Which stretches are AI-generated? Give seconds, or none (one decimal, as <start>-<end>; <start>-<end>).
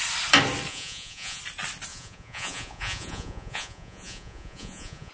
0.7-1.4; 1.9-5.1